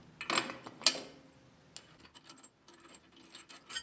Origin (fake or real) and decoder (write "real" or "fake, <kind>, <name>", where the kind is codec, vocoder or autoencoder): real